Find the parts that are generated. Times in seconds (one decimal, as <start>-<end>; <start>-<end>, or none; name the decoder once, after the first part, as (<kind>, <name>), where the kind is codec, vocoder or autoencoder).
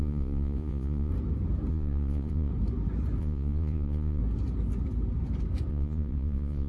0.0-1.1 (vocoder, Vocos); 1.7-2.5; 3.2-4.2; 5.7-6.7